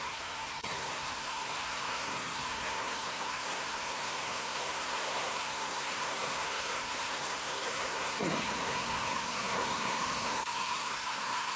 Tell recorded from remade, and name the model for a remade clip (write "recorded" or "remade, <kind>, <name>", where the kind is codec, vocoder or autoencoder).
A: remade, codec, SNAC